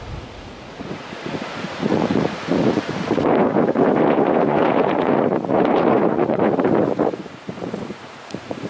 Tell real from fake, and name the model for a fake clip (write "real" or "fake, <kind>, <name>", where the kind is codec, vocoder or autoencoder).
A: fake, vocoder, Vocos